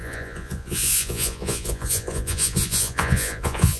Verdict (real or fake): fake